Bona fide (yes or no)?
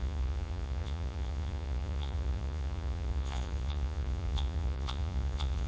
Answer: no